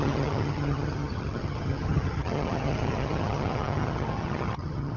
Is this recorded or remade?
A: remade